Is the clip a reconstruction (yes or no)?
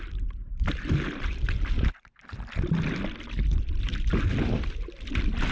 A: no